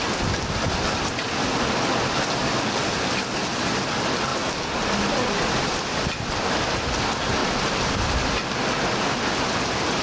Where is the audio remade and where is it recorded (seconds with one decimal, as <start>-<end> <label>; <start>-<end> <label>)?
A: 0.0-10.0 recorded

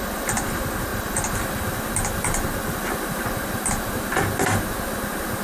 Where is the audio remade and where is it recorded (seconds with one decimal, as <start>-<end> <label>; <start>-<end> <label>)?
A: 0.0-0.9 recorded; 0.9-4.1 remade; 4.1-5.4 recorded